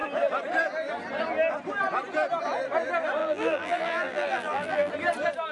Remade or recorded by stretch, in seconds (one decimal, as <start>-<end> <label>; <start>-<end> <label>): 0.0-3.2 recorded; 3.2-4.9 remade; 4.9-5.5 recorded